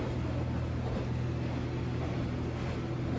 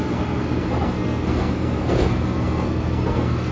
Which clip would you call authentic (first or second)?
first